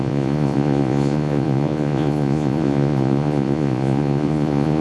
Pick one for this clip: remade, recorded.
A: remade